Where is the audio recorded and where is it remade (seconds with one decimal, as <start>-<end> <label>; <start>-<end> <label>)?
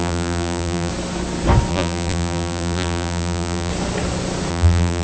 0.0-0.9 remade; 0.9-1.7 recorded; 1.7-3.7 remade; 3.7-4.5 recorded; 4.5-5.0 remade